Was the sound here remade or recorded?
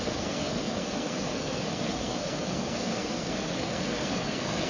remade